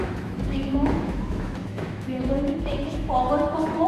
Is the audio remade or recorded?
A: remade